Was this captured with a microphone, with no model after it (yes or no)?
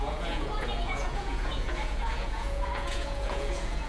no